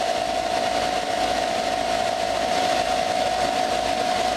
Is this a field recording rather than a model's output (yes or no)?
yes